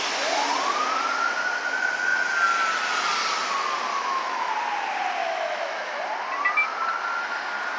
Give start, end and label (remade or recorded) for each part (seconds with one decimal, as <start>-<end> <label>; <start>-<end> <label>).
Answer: 0.0-3.9 recorded; 3.9-4.5 remade; 4.5-5.2 recorded; 5.2-6.0 remade; 6.0-7.8 recorded